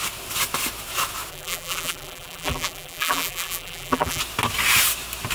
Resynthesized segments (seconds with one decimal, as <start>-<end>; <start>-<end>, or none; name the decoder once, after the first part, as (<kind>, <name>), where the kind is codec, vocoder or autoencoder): 1.3-4.2 (vocoder, BigVGAN v2)